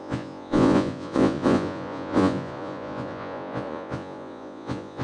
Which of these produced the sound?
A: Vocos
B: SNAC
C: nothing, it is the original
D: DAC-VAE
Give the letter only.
A